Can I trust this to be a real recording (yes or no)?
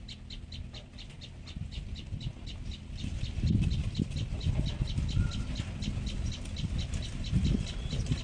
yes